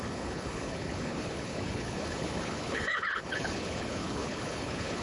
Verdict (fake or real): fake